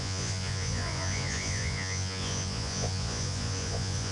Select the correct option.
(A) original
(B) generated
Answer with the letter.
B